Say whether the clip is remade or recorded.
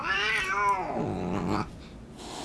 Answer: recorded